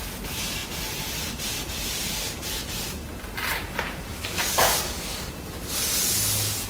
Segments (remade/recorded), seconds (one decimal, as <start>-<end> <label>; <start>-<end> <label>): 0.0-4.1 recorded; 4.1-5.3 remade; 5.3-6.7 recorded